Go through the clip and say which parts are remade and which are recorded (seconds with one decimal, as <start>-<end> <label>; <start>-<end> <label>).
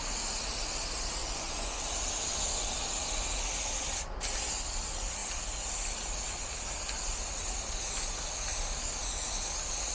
0.0-1.2 recorded; 1.2-1.8 remade; 1.8-9.9 recorded